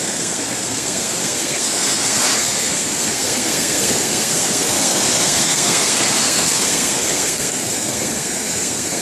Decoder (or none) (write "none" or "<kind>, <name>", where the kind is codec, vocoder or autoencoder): codec, SNAC